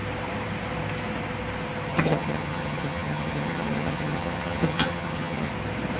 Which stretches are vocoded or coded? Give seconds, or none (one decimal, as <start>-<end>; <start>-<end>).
1.9-5.5